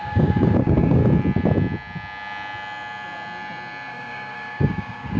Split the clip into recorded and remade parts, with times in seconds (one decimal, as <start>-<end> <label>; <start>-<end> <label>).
0.0-1.0 remade; 1.0-3.9 recorded; 3.9-5.2 remade